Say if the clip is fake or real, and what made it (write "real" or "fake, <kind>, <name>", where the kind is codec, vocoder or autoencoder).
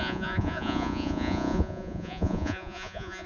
fake, vocoder, Vocos